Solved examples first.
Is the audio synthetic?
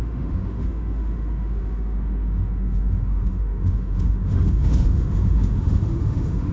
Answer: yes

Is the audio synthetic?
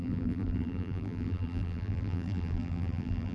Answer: yes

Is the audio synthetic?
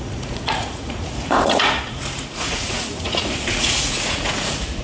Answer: yes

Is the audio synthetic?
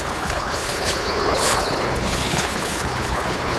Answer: yes